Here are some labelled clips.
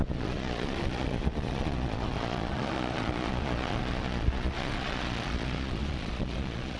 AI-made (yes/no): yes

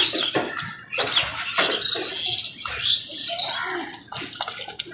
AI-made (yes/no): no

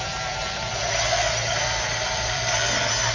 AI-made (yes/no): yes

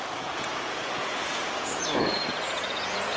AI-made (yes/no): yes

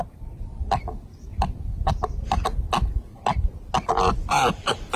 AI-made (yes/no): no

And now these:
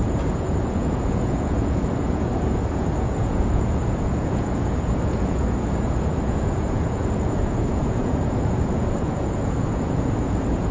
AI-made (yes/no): yes